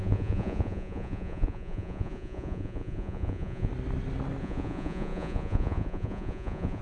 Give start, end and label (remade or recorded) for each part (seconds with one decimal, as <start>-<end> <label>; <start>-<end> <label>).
0.0-3.7 remade; 3.7-4.4 recorded; 4.4-6.8 remade